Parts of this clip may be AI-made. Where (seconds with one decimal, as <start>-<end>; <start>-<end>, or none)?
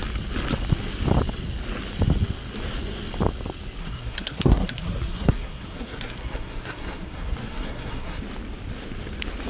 3.8-8.2